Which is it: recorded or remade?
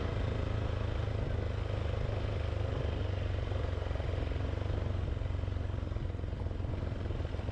recorded